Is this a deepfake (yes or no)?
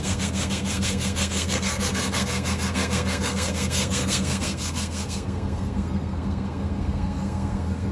yes